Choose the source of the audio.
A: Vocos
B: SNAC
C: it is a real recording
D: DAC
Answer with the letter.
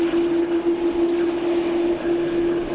C